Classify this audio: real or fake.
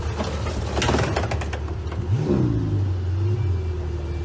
real